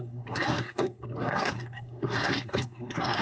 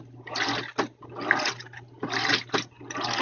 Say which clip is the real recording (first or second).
second